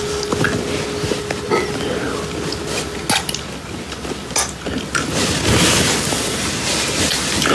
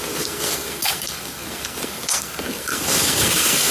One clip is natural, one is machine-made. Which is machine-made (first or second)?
second